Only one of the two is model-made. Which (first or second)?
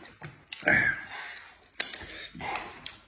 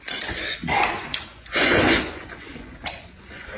second